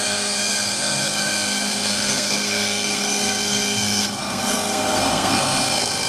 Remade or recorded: remade